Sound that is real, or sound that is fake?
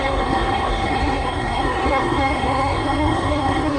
fake